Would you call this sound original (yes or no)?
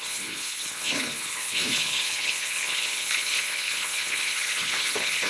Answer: no